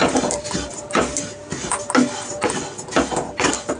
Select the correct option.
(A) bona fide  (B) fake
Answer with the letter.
A